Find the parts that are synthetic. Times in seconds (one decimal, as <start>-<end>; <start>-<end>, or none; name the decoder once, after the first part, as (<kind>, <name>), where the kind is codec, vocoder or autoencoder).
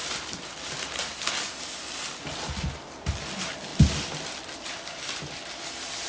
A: 0.0-1.0 (vocoder, BigVGAN v2); 3.7-6.1